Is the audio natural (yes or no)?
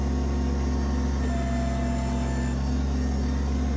yes